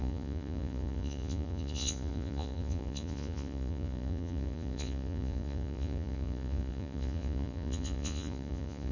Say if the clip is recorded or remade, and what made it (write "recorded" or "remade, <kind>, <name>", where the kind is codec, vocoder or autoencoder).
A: remade, vocoder, Vocos